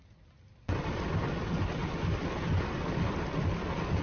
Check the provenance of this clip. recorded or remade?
recorded